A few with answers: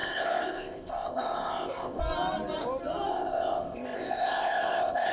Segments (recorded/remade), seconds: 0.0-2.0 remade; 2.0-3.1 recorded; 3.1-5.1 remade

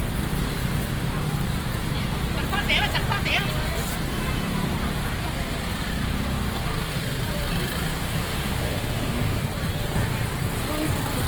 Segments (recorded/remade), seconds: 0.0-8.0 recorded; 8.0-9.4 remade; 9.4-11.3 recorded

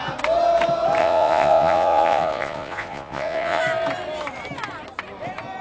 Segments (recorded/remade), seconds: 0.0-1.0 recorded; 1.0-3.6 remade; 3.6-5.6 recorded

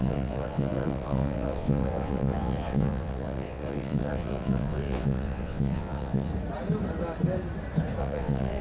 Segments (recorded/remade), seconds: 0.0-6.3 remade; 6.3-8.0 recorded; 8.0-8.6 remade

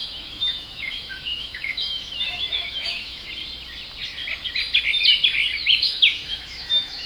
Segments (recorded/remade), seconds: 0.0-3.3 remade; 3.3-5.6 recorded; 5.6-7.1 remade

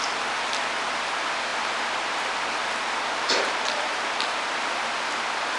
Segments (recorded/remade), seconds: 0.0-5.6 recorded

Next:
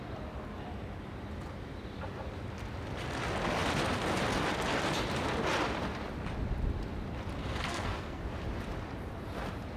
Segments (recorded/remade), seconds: 0.0-7.4 recorded; 7.4-8.2 remade; 8.2-9.8 recorded

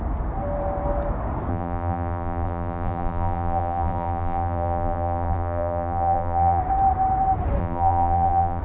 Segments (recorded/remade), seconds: 0.0-1.5 recorded; 1.5-6.6 remade; 6.6-7.6 recorded; 7.6-8.6 remade